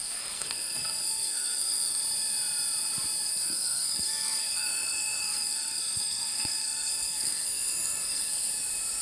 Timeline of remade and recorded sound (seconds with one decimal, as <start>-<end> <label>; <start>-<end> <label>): 0.0-2.0 remade; 2.0-3.3 recorded; 3.3-8.5 remade; 8.5-9.0 recorded